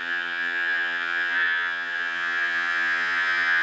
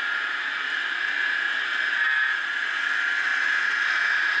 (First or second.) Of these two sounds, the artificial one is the first